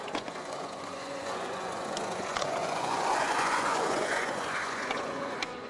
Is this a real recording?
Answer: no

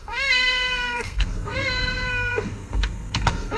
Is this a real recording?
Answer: no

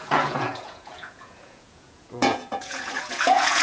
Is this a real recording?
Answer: no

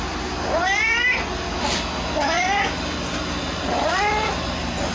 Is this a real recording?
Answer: yes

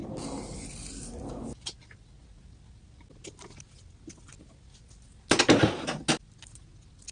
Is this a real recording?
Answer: yes